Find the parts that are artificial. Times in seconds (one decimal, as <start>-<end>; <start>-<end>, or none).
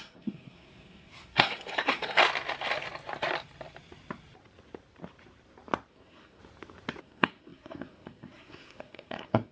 0.0-2.2; 5.9-6.4; 7.0-9.5